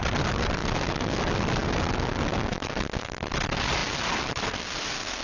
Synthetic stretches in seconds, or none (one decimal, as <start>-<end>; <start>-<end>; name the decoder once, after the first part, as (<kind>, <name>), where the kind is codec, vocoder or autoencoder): 0.6-1.2 (autoencoder, DAC-VAE)